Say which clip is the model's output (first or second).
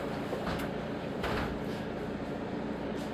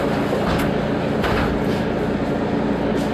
first